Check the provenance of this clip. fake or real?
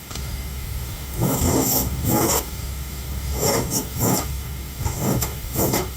fake